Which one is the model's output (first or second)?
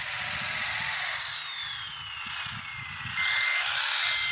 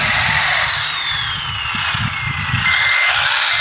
second